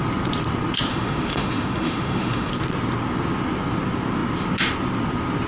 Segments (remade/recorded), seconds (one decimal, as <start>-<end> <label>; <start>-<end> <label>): 0.0-0.9 recorded; 0.9-2.5 remade; 2.5-5.5 recorded